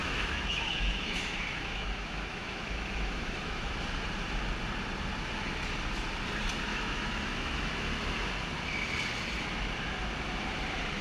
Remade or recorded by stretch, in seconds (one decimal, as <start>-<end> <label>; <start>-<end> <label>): 0.0-3.7 remade; 3.7-6.7 recorded; 6.7-7.7 remade; 7.7-11.0 recorded